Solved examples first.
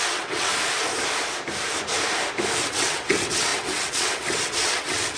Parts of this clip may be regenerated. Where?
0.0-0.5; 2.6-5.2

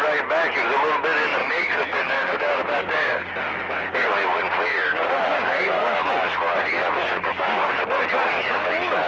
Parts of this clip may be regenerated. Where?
1.4-3.3; 4.7-6.0; 7.1-7.7

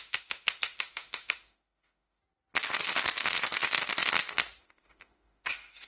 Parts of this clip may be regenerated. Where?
0.0-2.2; 4.6-5.9

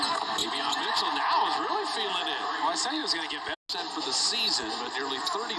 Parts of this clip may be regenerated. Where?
0.4-1.1

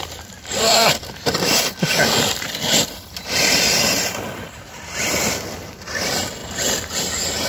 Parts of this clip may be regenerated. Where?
0.0-6.4

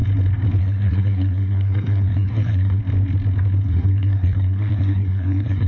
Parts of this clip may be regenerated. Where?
0.6-2.8; 3.7-5.7